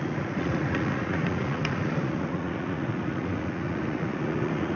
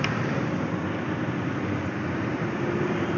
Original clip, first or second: second